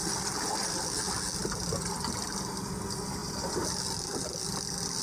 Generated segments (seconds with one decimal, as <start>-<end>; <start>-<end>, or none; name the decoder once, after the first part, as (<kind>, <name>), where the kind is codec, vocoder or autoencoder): 0.0-1.0 (vocoder, BigVGAN v2); 1.4-2.3; 3.2-4.2